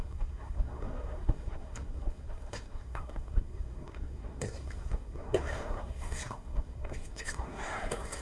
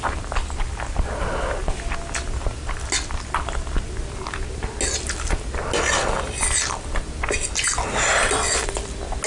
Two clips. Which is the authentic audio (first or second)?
second